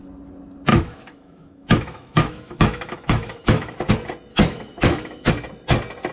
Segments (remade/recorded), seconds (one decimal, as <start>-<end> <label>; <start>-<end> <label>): 0.0-0.7 recorded; 0.7-3.9 remade; 3.9-4.3 recorded; 4.3-5.3 remade; 5.3-6.1 recorded